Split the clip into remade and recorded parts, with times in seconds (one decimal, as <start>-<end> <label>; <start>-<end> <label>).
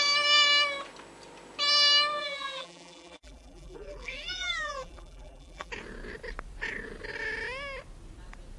0.0-2.2 recorded; 2.2-5.7 remade; 5.7-8.6 recorded